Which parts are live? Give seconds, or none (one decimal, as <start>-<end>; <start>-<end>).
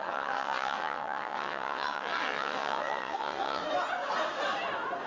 3.6-5.1